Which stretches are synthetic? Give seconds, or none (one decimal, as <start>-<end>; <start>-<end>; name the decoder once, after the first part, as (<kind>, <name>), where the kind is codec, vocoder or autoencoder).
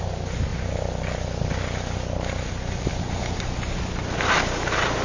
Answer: none